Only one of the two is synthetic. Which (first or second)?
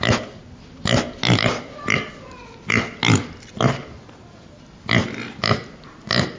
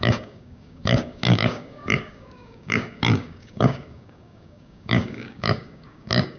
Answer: second